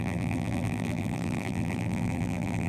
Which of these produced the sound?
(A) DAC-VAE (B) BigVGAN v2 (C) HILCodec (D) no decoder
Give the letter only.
B